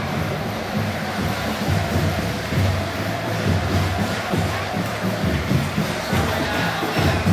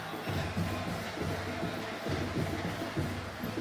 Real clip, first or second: second